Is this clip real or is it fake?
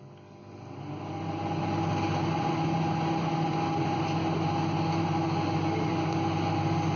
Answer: real